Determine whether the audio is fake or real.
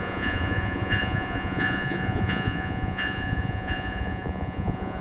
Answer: fake